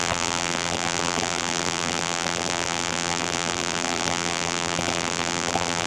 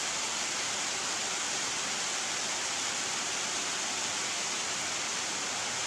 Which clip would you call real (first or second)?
second